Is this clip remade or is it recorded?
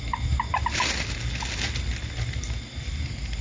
recorded